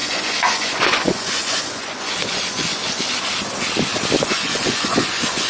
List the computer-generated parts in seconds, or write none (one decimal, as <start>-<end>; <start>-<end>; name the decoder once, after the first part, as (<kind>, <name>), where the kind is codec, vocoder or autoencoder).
0.0-2.8 (vocoder, Vocos); 4.2-5.5